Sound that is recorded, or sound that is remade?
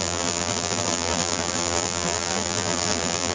remade